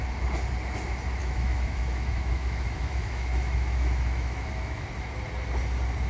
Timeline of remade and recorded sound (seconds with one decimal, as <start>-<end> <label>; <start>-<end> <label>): 0.0-1.2 recorded; 1.2-4.9 remade; 4.9-6.1 recorded